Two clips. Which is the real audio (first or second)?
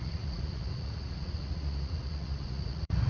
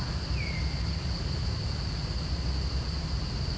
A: second